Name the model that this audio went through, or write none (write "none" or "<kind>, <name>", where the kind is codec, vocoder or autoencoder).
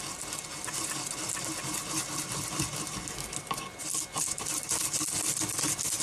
none